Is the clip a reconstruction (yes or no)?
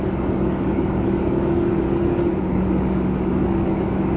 yes